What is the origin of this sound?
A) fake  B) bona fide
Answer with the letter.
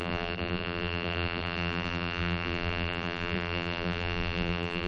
A